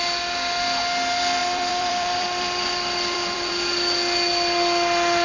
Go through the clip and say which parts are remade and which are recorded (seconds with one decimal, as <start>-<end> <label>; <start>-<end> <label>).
0.0-1.4 recorded; 1.4-3.5 remade; 3.5-5.2 recorded

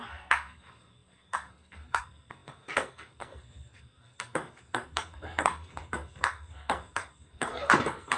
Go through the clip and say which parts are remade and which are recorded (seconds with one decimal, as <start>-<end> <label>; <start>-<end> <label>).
0.0-8.2 remade

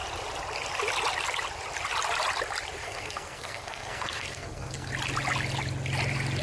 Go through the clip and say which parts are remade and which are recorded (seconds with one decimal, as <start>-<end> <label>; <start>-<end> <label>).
0.0-2.8 recorded; 2.8-4.9 remade; 4.9-6.4 recorded

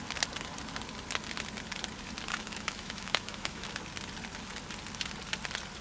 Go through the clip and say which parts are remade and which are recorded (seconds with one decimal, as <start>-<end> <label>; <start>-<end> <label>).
0.0-2.3 recorded; 2.3-3.8 remade; 3.8-5.8 recorded

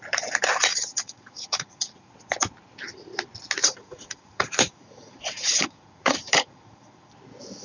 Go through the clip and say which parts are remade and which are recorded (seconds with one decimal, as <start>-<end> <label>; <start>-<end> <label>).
0.0-0.7 recorded; 0.7-2.1 remade; 2.1-3.6 recorded; 3.6-7.1 remade; 7.1-7.6 recorded